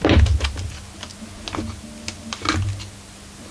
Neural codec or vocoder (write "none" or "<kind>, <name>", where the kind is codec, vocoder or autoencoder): none